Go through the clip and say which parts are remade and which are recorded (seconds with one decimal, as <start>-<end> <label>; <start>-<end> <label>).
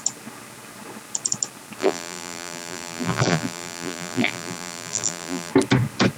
0.0-1.8 recorded; 1.8-5.5 remade; 5.5-6.2 recorded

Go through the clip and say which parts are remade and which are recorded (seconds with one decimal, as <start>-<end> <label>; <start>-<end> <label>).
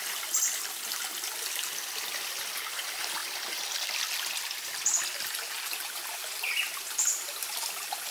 0.0-8.1 recorded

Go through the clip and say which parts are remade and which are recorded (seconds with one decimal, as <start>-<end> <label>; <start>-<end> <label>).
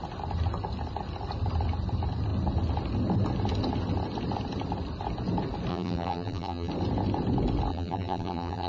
0.0-5.7 recorded; 5.7-6.7 remade; 6.7-7.7 recorded; 7.7-8.7 remade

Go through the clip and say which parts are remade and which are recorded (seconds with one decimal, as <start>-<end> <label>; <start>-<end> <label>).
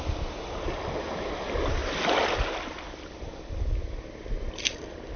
0.0-5.2 recorded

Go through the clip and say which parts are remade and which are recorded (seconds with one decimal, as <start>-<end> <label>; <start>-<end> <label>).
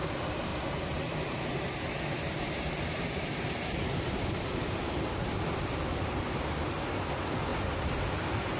0.0-0.5 recorded; 0.5-4.3 remade; 4.3-7.5 recorded; 7.5-8.6 remade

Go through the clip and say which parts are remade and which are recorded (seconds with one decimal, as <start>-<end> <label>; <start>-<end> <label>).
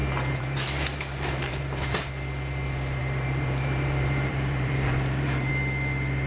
0.0-2.1 remade; 2.1-3.0 recorded; 3.0-5.5 remade; 5.5-6.3 recorded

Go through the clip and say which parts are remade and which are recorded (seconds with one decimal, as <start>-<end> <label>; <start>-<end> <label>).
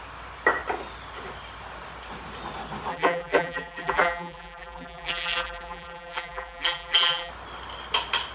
0.0-2.9 recorded; 2.9-7.3 remade; 7.3-8.3 recorded